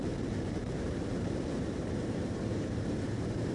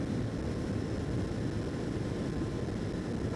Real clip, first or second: second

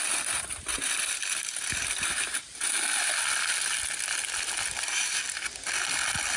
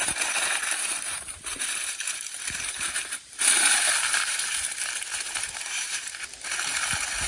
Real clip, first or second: first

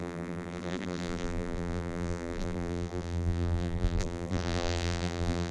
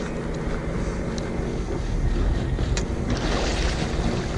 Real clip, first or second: second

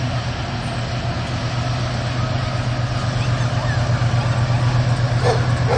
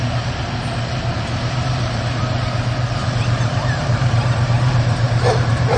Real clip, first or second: first